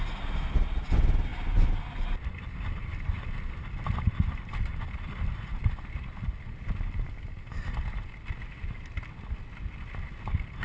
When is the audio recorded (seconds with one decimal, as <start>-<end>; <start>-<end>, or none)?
0.0-10.6